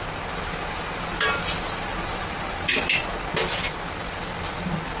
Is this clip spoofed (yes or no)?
no